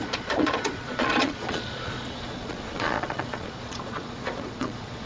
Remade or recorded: remade